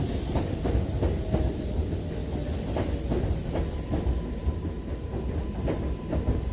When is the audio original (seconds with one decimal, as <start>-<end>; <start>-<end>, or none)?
0.0-6.5